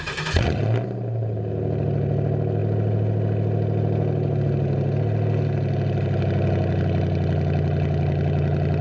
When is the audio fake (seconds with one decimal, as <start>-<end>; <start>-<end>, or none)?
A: none